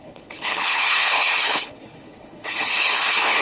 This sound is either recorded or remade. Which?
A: remade